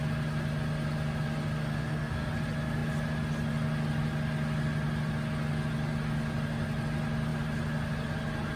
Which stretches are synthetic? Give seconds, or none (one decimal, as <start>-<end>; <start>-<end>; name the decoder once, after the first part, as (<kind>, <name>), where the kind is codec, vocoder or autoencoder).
1.6-2.3 (codec, SNAC)